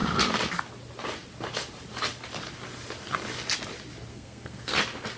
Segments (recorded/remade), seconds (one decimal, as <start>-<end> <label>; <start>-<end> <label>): 0.0-4.1 recorded; 4.1-4.8 remade; 4.8-5.2 recorded